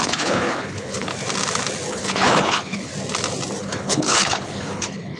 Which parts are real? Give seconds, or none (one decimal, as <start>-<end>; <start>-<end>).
1.1-1.9; 2.9-3.6